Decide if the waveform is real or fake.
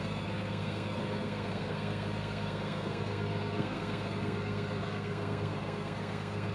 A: fake